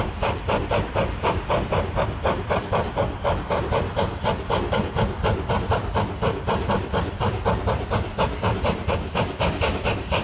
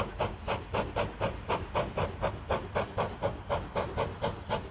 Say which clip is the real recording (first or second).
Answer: second